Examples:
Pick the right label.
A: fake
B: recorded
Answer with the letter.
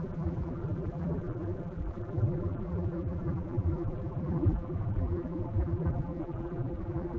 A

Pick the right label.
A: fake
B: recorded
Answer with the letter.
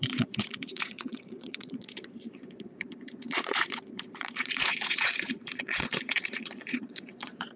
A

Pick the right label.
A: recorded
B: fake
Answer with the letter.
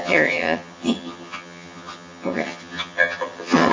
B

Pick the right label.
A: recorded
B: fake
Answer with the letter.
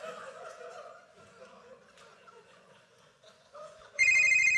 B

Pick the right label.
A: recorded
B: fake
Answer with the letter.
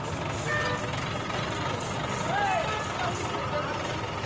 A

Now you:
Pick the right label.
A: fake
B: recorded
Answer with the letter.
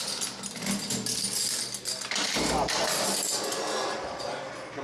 B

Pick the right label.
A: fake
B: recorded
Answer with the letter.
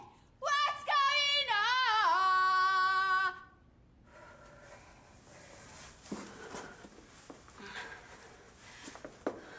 B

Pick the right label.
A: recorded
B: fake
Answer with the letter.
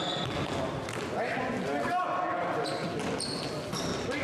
A